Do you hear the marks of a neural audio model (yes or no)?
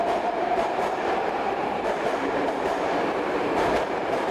yes